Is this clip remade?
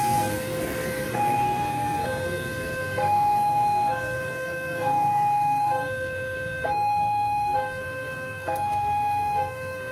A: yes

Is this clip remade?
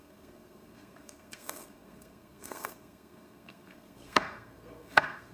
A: yes